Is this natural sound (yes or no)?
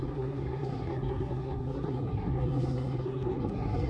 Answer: no